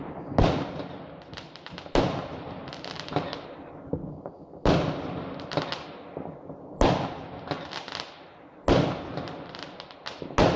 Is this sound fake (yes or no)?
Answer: no